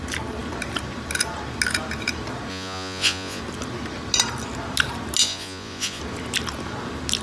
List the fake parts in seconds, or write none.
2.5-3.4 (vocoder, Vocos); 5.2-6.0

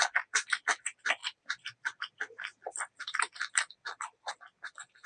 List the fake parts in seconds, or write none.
none

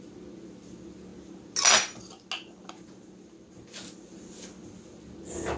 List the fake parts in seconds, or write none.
none

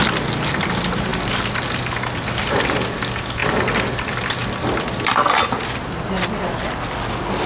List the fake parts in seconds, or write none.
none

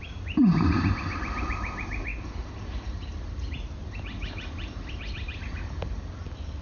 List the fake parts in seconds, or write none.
0.5-1.5 (vocoder, BigVGAN v2); 2.1-2.6